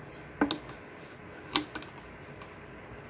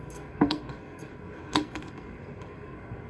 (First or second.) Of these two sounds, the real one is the first